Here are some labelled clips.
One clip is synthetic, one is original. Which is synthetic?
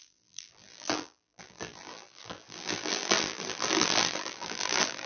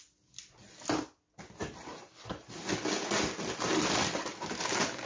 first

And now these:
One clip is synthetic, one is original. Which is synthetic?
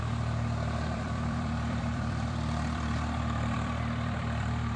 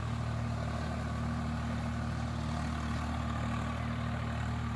first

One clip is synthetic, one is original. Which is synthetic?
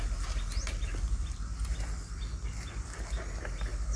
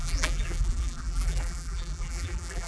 second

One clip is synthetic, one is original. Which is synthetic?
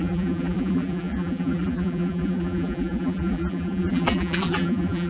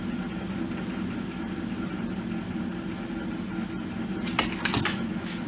first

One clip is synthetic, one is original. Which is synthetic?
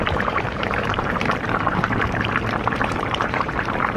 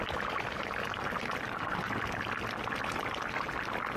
first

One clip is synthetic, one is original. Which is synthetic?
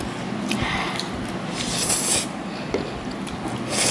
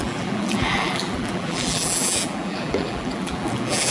second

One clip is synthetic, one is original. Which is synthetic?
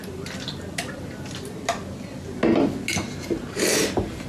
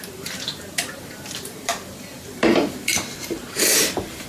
second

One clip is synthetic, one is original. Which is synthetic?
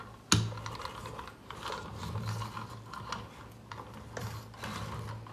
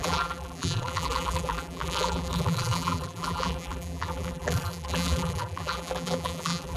second